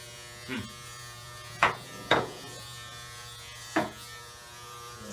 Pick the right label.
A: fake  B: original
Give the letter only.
A